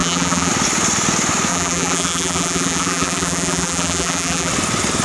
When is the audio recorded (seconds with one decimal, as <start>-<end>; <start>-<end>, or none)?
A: 0.5-1.5; 4.5-5.0